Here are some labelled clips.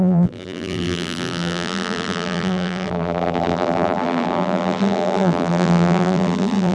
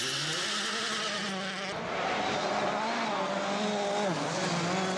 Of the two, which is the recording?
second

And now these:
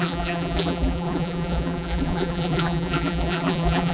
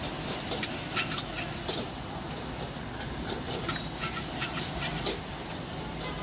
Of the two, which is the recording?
second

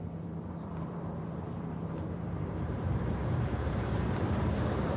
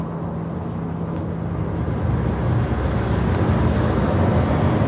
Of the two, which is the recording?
second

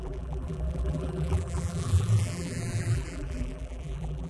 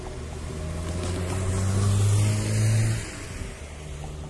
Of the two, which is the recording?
second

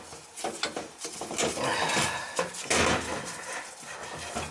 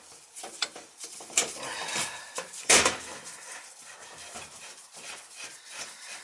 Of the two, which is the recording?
first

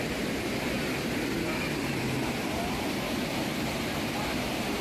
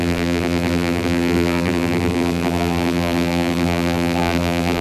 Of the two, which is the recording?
first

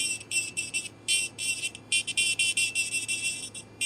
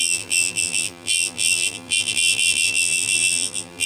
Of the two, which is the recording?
first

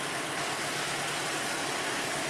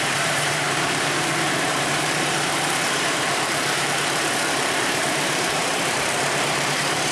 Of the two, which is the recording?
first